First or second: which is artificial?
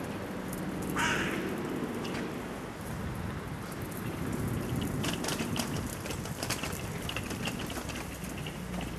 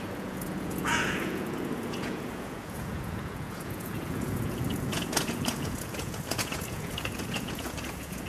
second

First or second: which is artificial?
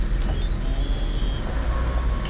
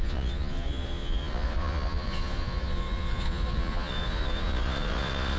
second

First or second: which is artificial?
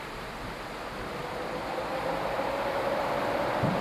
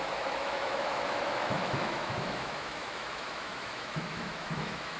second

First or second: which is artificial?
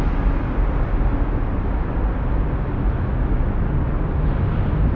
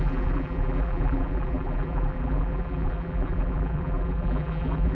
second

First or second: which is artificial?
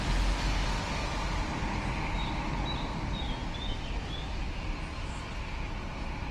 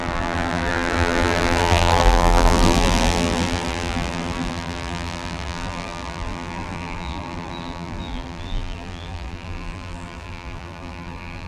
second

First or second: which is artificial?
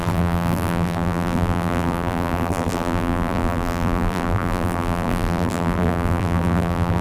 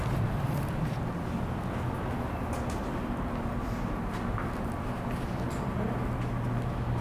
first